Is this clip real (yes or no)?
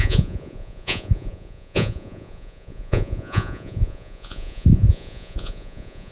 no